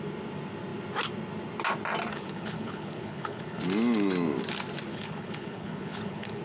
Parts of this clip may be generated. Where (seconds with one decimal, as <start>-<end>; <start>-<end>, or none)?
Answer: 2.1-3.6; 4.9-6.4